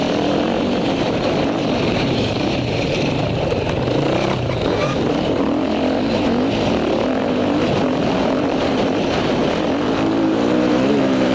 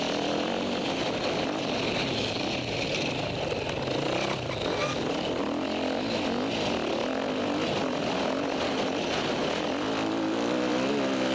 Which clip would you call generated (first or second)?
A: first